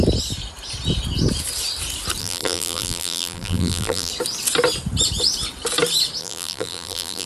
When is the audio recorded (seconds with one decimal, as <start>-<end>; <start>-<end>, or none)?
0.0-2.2; 4.1-6.2